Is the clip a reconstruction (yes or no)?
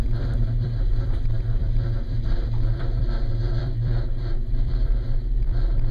yes